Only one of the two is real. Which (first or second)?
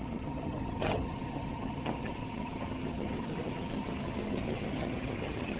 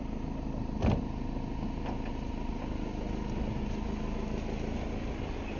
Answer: second